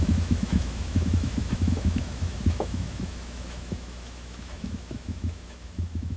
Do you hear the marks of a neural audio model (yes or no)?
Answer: yes